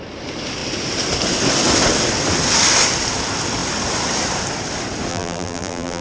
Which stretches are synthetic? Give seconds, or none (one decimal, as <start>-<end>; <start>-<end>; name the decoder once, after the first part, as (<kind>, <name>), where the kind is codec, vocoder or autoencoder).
5.1-6.0 (vocoder, BigVGAN v2)